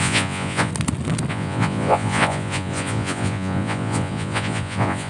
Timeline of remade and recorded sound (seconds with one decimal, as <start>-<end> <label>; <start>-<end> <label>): 0.0-0.7 remade; 0.7-1.3 recorded; 1.3-5.1 remade